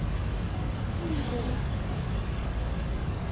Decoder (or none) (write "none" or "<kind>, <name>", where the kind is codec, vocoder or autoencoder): codec, DAC